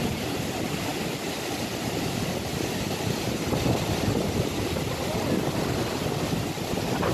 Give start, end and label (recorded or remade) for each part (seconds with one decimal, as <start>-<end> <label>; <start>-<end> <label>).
0.0-7.1 recorded